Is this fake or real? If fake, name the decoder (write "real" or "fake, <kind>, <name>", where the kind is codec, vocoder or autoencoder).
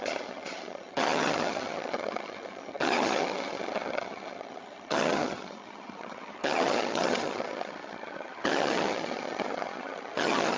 fake, vocoder, HiFi-GAN